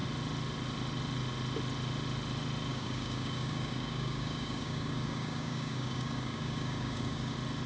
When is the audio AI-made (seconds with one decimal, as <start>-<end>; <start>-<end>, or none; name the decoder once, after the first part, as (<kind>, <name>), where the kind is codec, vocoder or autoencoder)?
2.7-7.3 (codec, DAC)